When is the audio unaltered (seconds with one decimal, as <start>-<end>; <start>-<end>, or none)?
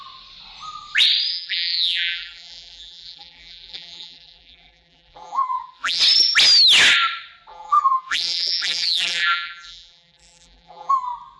0.0-1.3; 6.0-7.5; 10.9-11.4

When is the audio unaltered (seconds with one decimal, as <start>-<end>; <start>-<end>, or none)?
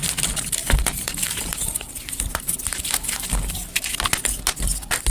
0.0-0.6; 3.7-5.1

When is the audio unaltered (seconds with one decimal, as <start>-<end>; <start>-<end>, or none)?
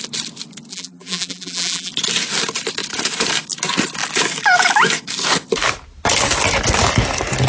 0.0-0.7; 1.9-7.5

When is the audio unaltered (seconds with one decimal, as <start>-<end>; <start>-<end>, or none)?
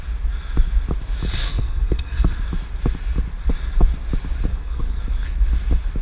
0.0-1.4; 2.4-4.5; 5.0-6.0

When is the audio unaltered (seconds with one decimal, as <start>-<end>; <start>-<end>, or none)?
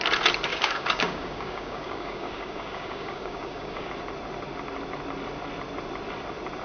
0.0-0.5; 3.9-6.6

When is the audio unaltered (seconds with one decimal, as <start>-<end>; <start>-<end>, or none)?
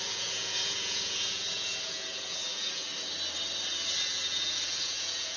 2.9-3.9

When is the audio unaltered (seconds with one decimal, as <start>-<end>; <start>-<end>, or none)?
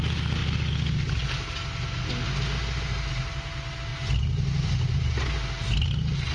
0.0-6.3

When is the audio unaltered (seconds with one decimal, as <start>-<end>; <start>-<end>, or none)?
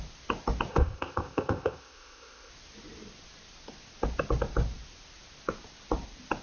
0.0-0.7; 2.5-6.4